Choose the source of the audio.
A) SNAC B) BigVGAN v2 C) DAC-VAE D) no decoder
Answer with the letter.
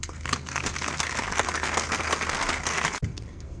A